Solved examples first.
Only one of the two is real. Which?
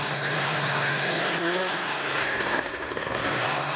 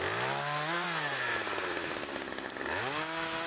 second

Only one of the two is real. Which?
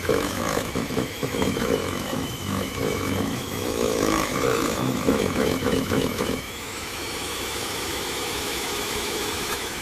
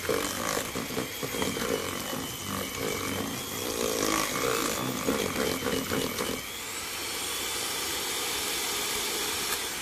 second